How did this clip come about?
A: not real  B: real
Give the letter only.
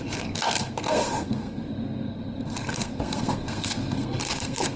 A